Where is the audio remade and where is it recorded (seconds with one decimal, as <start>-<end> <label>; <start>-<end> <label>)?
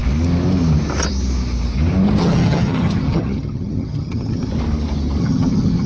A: 0.0-2.2 recorded; 2.2-4.5 remade; 4.5-5.2 recorded; 5.2-5.9 remade